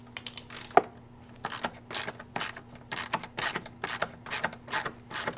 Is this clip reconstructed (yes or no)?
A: no